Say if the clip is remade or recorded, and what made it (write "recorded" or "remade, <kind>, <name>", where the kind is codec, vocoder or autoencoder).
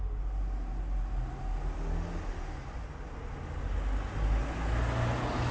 recorded